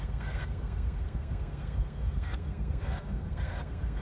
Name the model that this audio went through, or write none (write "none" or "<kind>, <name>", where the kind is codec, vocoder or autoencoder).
codec, SNAC